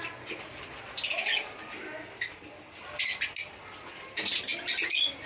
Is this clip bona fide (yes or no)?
yes